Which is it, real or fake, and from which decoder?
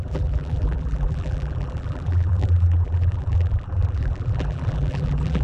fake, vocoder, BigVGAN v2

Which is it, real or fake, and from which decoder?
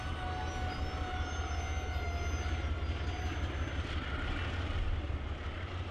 real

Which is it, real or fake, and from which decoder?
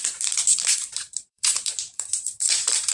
fake, vocoder, BigVGAN v2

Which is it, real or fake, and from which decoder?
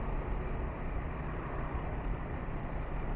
fake, vocoder, BigVGAN v2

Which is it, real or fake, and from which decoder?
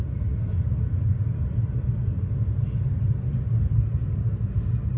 real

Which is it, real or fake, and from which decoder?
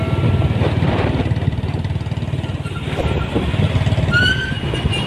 real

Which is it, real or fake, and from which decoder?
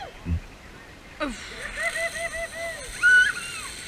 real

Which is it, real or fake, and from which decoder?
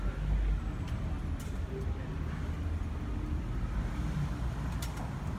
real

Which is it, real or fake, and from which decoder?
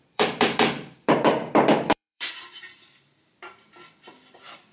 fake, vocoder, BigVGAN v2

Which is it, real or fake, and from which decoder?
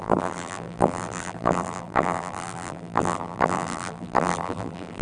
fake, vocoder, BigVGAN v2